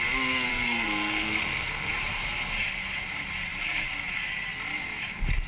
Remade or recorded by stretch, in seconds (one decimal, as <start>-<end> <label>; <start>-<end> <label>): 0.0-0.5 recorded; 0.5-1.9 remade; 1.9-5.5 recorded